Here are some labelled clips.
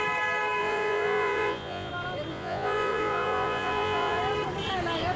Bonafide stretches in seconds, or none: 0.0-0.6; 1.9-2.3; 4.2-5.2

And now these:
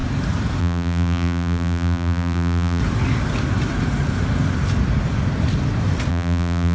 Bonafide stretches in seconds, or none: 0.0-0.6; 2.8-6.1

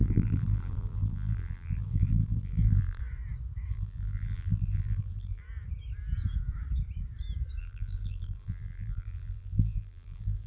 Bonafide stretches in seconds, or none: 3.0-3.7; 5.4-7.6

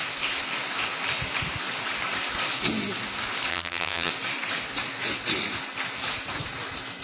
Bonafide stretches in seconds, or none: 0.0-3.5; 4.1-7.0

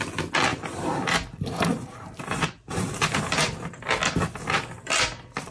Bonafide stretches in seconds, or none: 0.0-0.5; 3.8-5.5